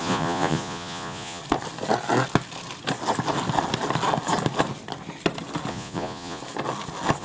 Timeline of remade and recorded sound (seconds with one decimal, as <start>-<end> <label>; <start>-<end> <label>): 0.0-1.4 remade; 1.4-5.7 recorded; 5.7-6.4 remade; 6.4-7.2 recorded

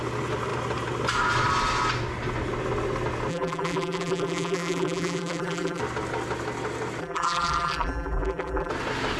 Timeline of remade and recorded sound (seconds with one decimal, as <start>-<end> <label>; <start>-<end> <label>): 0.0-3.3 recorded; 3.3-5.8 remade; 5.8-7.0 recorded; 7.0-8.7 remade; 8.7-9.2 recorded

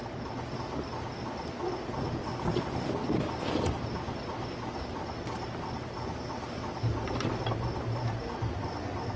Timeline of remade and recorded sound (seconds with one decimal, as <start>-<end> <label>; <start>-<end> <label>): 0.0-9.2 recorded

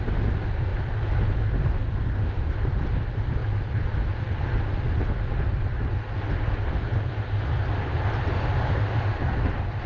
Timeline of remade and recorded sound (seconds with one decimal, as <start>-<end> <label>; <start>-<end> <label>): 0.0-9.9 recorded

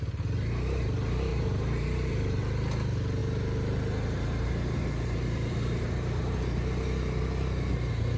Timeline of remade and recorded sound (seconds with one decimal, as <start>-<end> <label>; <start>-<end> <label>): 0.0-1.3 recorded; 1.3-2.4 remade; 2.4-3.2 recorded; 3.2-6.2 remade; 6.2-8.2 recorded

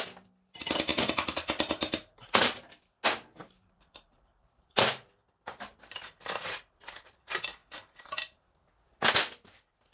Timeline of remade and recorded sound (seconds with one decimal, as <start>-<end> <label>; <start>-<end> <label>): 0.0-0.9 recorded; 0.9-2.7 remade; 2.7-3.4 recorded; 3.4-7.1 remade; 7.1-9.9 recorded

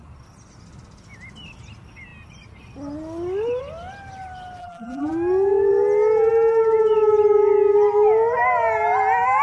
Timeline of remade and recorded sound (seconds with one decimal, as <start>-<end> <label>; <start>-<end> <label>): 0.0-4.6 recorded; 4.6-5.1 remade; 5.1-9.4 recorded

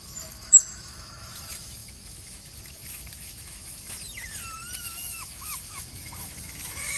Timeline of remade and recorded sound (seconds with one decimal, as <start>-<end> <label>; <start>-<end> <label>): 0.0-4.0 remade; 4.0-4.8 recorded; 4.8-7.0 remade